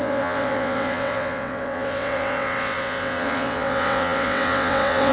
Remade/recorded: remade